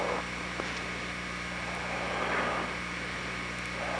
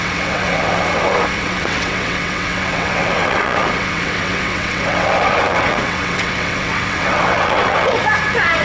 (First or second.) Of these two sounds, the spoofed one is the second